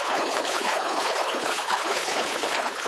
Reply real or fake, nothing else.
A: fake